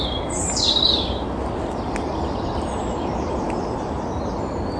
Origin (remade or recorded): recorded